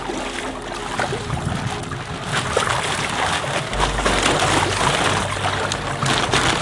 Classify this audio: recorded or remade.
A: recorded